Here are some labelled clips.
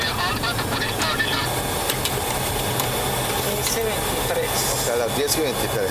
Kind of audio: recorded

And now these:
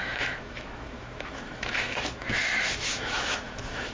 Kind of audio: remade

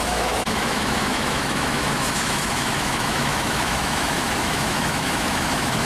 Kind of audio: remade